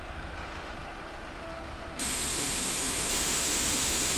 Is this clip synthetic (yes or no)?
yes